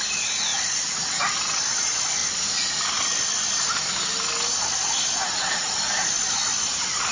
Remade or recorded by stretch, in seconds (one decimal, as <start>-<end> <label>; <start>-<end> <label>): 0.0-7.1 recorded